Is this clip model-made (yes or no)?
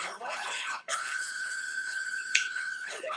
yes